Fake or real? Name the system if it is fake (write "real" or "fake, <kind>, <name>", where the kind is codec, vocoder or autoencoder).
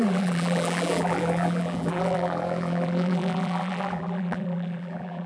fake, vocoder, BigVGAN v2